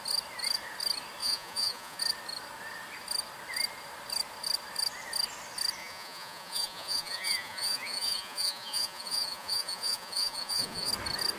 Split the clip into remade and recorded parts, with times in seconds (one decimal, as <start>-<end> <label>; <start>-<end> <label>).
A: 0.0-1.2 recorded; 1.2-2.0 remade; 2.0-5.8 recorded; 5.8-10.9 remade; 10.9-11.4 recorded